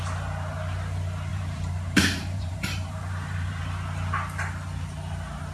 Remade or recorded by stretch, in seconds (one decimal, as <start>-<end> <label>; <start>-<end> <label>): 0.0-1.3 recorded; 1.3-3.6 remade; 3.6-5.5 recorded